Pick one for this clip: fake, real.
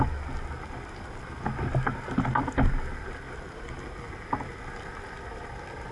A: real